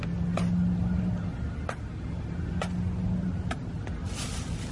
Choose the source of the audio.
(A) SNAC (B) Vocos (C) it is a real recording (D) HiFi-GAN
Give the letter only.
C